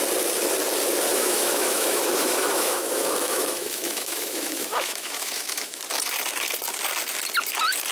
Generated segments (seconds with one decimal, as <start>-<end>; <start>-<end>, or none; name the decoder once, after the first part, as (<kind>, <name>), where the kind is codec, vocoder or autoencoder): 1.1-5.8 (autoencoder, DAC-VAE)